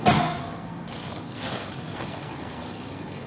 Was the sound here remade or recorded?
remade